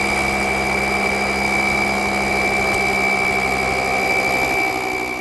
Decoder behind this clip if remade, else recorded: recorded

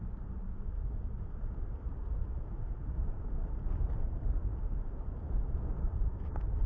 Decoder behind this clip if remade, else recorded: recorded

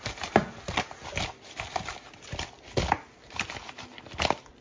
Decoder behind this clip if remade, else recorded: recorded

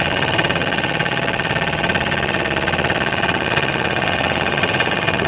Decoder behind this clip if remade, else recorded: remade, vocoder, WaveNeXt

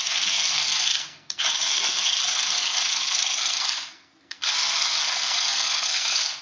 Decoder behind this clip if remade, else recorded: remade, codec, SNAC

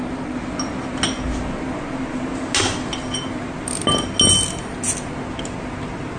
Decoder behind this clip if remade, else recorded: recorded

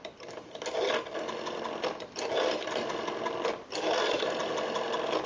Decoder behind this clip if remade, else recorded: recorded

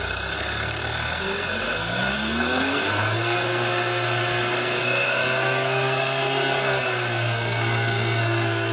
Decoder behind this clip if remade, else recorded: remade, codec, SNAC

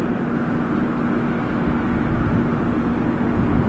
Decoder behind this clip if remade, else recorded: recorded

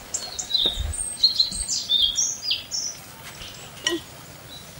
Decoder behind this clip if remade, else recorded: recorded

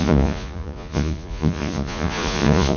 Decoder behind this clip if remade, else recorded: remade, vocoder, Vocos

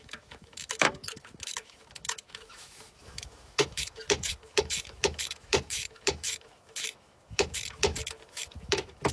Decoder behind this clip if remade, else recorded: remade, autoencoder, DAC-VAE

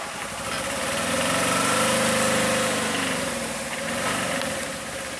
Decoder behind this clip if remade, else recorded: remade, vocoder, BigVGAN v2